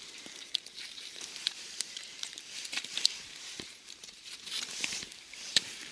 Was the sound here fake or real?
fake